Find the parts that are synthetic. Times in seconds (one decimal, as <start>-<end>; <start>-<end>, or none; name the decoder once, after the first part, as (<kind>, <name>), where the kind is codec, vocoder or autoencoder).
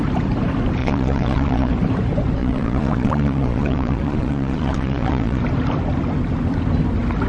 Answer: 0.8-1.7 (vocoder, Vocos); 2.4-5.4